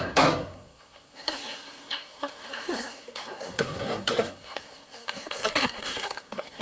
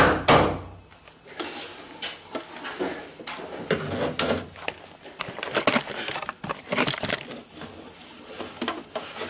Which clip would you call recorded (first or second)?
second